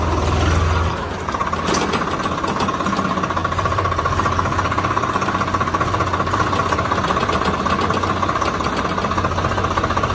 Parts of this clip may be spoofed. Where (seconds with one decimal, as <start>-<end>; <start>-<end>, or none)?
3.4-7.8